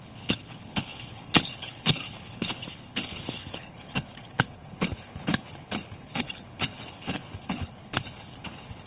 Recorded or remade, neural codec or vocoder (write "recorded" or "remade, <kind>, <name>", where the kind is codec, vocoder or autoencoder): remade, codec, HILCodec